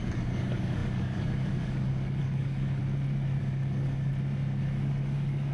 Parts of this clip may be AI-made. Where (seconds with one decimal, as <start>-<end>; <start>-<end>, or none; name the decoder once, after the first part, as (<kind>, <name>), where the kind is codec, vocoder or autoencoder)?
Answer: 0.0-2.8 (codec, DAC); 3.4-4.1; 4.6-5.5